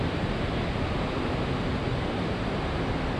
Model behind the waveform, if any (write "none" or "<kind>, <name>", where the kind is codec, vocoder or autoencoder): none